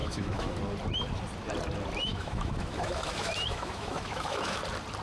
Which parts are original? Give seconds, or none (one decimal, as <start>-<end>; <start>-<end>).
0.6-2.1; 4.6-5.0